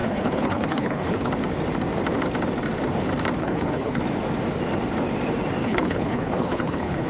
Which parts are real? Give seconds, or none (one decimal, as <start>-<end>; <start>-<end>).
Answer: 1.3-3.4; 4.0-5.6